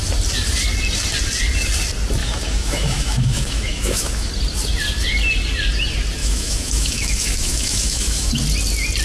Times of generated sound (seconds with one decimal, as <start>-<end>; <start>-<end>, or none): 2.2-4.3; 6.2-8.3